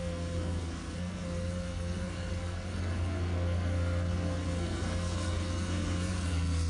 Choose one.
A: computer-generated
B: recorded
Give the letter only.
A